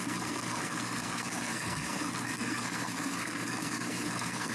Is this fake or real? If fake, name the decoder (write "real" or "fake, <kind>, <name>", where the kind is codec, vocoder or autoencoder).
fake, codec, SNAC